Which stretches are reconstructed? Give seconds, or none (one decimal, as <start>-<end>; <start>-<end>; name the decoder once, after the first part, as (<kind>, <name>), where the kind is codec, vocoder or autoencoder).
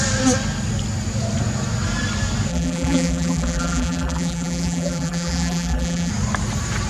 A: 2.5-6.1 (vocoder, BigVGAN v2)